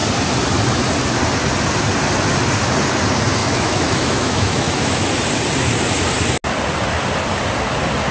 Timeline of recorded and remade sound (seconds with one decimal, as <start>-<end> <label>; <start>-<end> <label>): 0.0-3.4 recorded; 3.4-5.1 remade; 5.1-8.1 recorded

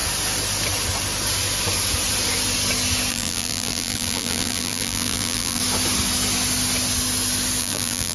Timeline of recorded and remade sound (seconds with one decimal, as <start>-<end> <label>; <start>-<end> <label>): 0.0-3.1 recorded; 3.1-5.6 remade; 5.6-7.6 recorded; 7.6-8.1 remade

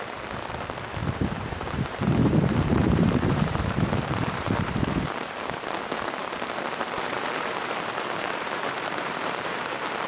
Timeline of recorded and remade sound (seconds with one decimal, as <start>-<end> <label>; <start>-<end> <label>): 0.0-1.0 recorded; 1.0-5.0 remade; 5.0-6.2 recorded; 6.2-9.6 remade; 9.6-10.1 recorded